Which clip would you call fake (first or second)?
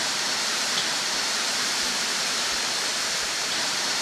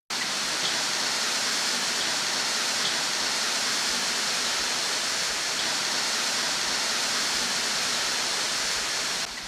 first